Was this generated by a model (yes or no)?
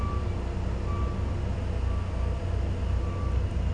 no